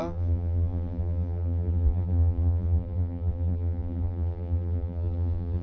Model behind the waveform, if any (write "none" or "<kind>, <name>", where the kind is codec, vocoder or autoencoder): vocoder, BigVGAN v2